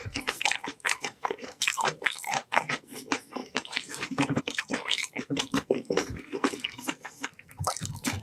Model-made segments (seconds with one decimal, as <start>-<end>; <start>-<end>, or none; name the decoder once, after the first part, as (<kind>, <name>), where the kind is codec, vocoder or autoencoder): 0.0-8.2 (codec, SNAC)